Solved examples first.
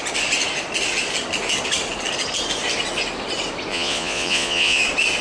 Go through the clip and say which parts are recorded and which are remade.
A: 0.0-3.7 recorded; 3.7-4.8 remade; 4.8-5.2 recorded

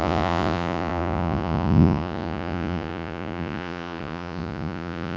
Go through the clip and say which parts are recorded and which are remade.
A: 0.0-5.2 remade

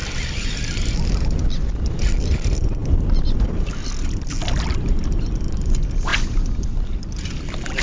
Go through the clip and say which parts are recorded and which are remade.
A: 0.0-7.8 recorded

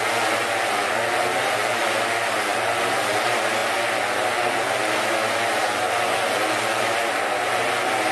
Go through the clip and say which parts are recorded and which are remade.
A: 0.0-8.1 recorded